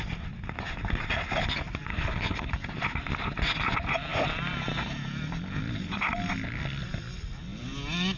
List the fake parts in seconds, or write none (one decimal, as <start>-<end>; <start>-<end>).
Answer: 1.9-2.5